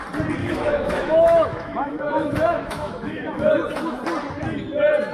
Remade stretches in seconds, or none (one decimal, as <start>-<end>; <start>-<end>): 0.4-3.5